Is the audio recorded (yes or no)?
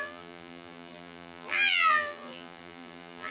no